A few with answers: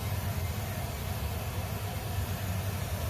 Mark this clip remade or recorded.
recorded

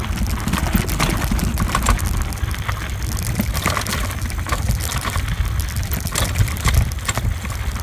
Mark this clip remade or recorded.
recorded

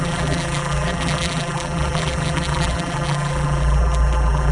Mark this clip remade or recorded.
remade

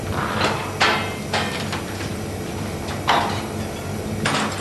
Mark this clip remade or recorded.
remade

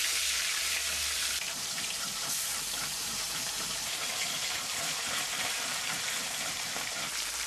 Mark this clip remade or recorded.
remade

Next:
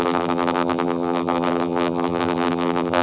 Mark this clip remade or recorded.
remade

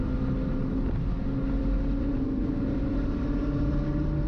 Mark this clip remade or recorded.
recorded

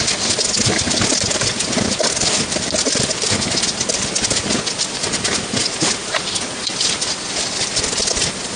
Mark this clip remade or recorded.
recorded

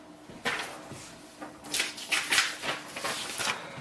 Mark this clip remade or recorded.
recorded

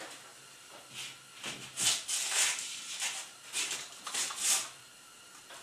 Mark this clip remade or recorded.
recorded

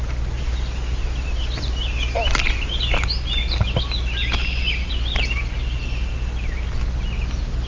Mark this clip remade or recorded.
recorded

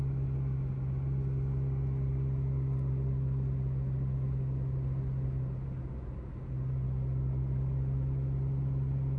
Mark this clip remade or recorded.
recorded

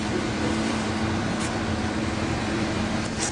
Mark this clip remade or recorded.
remade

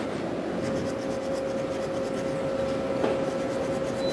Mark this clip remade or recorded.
recorded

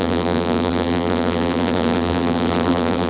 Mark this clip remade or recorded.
remade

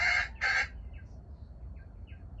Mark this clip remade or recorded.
recorded